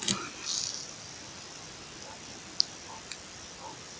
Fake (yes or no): no